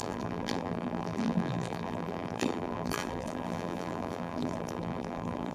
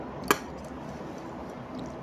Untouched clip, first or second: second